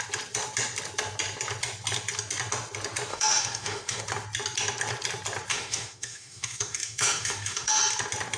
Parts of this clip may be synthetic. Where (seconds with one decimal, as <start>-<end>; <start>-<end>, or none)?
3.1-4.0; 5.5-7.8